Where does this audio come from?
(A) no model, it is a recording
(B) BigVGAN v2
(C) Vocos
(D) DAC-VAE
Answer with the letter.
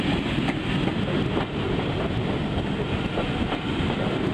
A